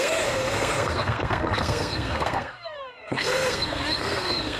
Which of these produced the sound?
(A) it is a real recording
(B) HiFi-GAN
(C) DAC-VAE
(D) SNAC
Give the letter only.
D